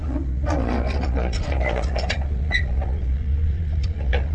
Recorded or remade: remade